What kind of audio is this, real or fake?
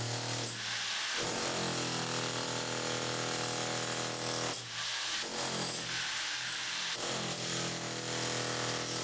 real